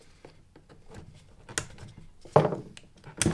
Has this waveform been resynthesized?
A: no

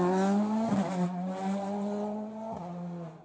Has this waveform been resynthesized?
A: no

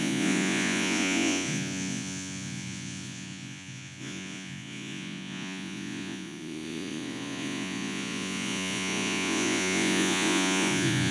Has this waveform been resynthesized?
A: yes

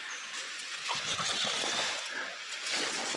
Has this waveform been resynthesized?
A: yes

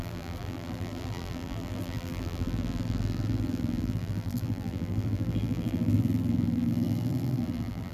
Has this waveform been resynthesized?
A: yes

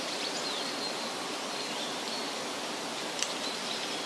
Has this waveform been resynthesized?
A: no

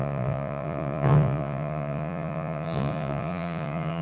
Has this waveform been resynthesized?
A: yes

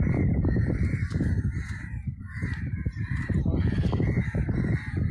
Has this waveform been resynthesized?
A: yes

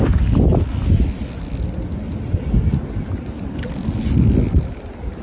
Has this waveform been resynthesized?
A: no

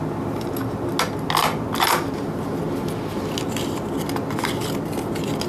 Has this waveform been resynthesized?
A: no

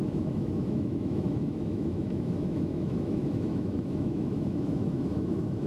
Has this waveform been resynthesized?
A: yes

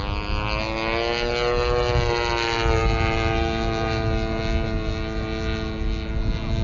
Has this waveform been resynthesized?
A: no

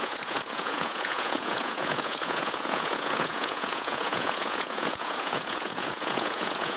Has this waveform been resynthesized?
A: yes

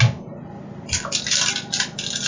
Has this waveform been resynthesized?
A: no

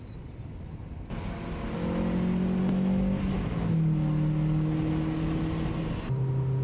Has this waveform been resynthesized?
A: no